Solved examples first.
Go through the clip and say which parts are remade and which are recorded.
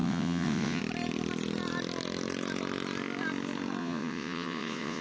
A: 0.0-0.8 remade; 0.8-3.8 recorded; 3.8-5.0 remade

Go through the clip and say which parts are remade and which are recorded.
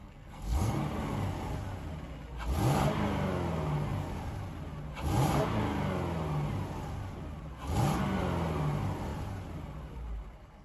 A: 0.0-0.8 remade; 0.8-10.6 recorded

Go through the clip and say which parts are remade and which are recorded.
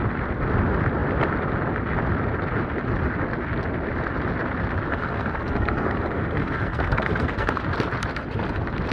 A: 0.0-4.9 recorded; 4.9-7.6 remade; 7.6-8.9 recorded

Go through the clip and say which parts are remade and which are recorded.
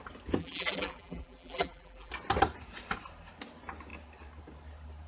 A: 0.0-0.4 recorded; 0.4-2.1 remade; 2.1-5.1 recorded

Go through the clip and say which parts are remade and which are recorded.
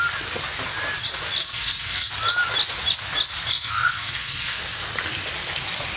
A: 0.0-1.4 recorded; 1.4-2.1 remade; 2.1-3.5 recorded; 3.5-4.6 remade; 4.6-6.0 recorded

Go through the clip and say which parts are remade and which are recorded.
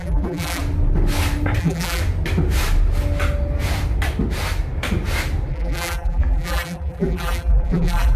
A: 0.0-0.6 remade; 0.6-1.6 recorded; 1.6-2.0 remade; 2.0-5.5 recorded; 5.5-8.2 remade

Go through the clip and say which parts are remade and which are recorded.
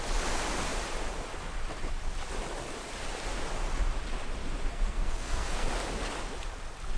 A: 0.0-4.7 recorded; 4.7-5.7 remade; 5.7-7.0 recorded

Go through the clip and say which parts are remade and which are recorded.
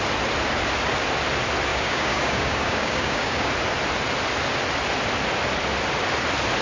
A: 0.0-1.7 recorded; 1.7-3.5 remade; 3.5-6.6 recorded